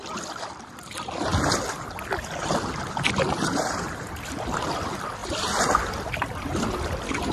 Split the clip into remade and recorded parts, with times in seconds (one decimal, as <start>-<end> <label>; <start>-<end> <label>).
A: 0.0-1.3 remade; 1.3-2.4 recorded; 2.4-5.2 remade; 5.2-7.3 recorded